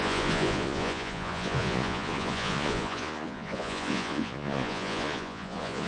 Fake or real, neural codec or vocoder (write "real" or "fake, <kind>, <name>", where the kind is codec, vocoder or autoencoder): fake, vocoder, Vocos